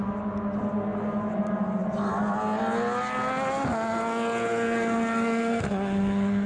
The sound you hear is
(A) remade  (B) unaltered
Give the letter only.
B